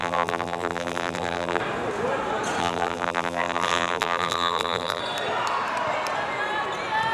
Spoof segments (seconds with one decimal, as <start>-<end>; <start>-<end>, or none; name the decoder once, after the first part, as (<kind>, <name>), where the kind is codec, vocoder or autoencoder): 0.0-1.6 (vocoder, BigVGAN v2); 2.6-5.0